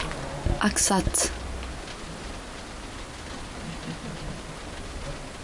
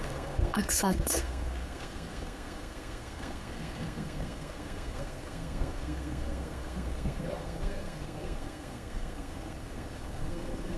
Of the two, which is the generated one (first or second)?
second